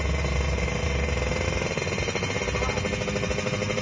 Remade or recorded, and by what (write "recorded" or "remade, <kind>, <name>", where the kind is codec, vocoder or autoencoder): recorded